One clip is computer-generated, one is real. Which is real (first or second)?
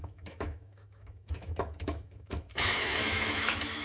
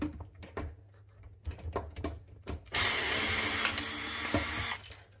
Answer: second